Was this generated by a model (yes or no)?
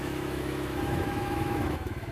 yes